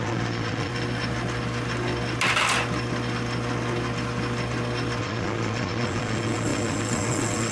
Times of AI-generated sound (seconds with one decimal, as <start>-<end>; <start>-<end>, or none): 0.0-0.7; 5.0-7.5